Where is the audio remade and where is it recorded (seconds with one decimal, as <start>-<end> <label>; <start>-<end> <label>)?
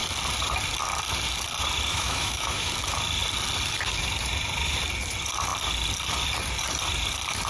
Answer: 0.0-1.9 recorded; 1.9-2.7 remade; 2.7-7.5 recorded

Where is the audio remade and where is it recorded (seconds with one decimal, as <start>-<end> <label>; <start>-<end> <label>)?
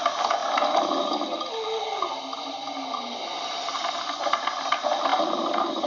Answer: 0.0-5.9 recorded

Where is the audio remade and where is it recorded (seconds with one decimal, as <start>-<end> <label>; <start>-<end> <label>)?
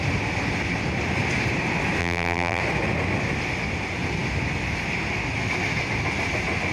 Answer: 0.0-2.0 recorded; 2.0-2.6 remade; 2.6-6.7 recorded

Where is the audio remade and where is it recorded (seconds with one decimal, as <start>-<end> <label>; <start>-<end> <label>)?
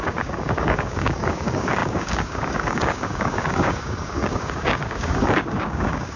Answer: 0.0-6.2 remade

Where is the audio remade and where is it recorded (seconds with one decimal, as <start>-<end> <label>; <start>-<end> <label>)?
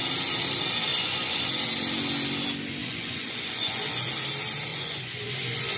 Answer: 0.0-0.9 recorded; 0.9-1.4 remade; 1.4-2.8 recorded; 2.8-4.1 remade; 4.1-4.7 recorded; 4.7-5.8 remade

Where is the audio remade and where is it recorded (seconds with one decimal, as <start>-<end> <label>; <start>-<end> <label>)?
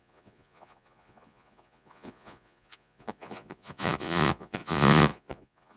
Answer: 0.0-5.8 remade